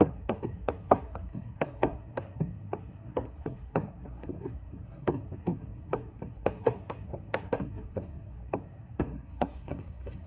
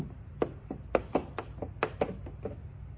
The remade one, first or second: first